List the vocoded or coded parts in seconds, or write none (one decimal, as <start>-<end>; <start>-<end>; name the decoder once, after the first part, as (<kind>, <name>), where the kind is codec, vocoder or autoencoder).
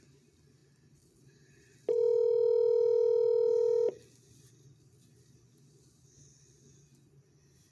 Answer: none